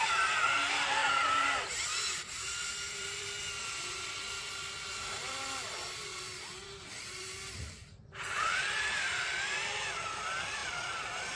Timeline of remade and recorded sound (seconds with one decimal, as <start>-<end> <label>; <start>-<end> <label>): 0.0-11.4 remade